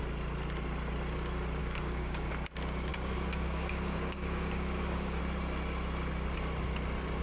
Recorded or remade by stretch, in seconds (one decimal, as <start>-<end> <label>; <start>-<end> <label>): 0.0-1.6 recorded; 1.6-2.3 remade; 2.3-2.9 recorded; 2.9-5.2 remade; 5.2-7.2 recorded